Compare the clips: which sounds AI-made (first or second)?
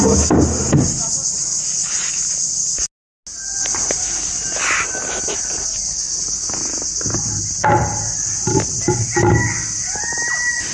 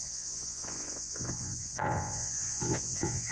second